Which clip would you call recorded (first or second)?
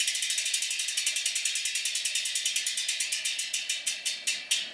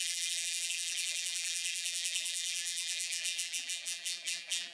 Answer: first